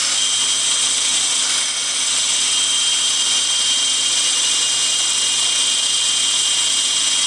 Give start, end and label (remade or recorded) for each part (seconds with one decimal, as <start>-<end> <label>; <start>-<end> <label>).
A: 0.0-2.8 recorded; 2.8-4.7 remade; 4.7-7.3 recorded